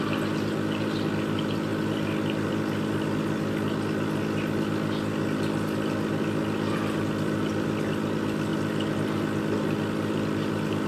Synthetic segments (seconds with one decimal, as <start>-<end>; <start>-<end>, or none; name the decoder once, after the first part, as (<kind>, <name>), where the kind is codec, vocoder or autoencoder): none